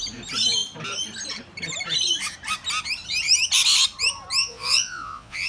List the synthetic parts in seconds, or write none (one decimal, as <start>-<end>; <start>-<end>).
4.4-5.5